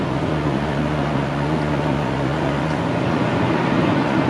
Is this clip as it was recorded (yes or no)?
no